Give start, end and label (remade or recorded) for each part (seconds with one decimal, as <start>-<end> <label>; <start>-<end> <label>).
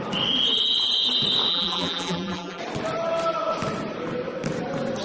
0.0-1.5 recorded; 1.5-2.6 remade; 2.6-5.0 recorded